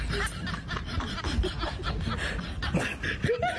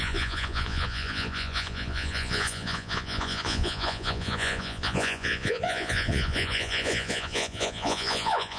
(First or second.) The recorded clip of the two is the first